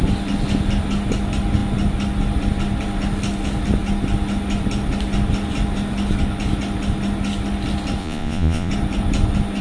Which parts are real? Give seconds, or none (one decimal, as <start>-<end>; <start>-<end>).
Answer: 0.0-8.0; 8.7-9.6